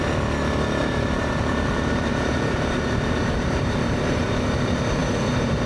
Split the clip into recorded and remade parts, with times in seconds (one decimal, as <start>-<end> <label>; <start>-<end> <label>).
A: 0.0-0.8 recorded; 0.8-4.2 remade; 4.2-5.0 recorded; 5.0-5.7 remade